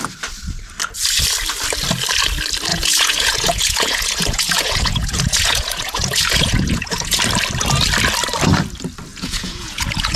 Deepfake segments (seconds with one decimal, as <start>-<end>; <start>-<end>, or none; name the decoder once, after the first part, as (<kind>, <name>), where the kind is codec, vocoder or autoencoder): 2.7-7.2 (vocoder, Vocos); 9.1-10.2